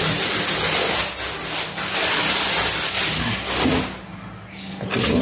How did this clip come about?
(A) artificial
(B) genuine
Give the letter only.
B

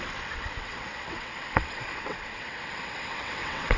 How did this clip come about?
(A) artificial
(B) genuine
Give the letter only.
A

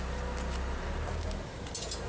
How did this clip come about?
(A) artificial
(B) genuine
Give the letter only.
B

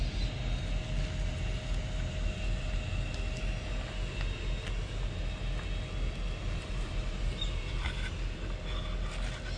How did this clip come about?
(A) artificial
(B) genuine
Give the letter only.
B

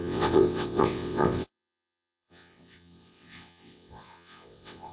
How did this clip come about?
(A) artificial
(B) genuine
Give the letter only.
A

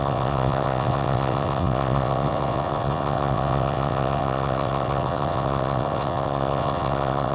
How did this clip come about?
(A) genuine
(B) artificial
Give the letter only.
B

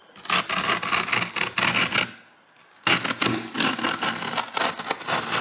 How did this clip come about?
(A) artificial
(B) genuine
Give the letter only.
B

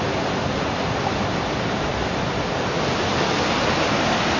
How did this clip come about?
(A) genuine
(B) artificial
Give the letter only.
A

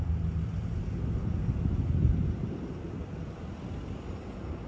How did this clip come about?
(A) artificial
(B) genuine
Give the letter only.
B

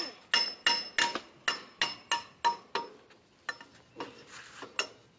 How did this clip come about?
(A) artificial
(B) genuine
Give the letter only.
B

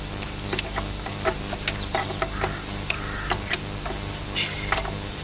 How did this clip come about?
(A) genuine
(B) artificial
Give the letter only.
A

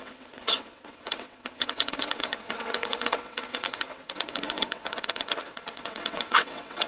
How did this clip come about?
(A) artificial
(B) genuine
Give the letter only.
A